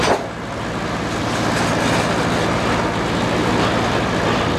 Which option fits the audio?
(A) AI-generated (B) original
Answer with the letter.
B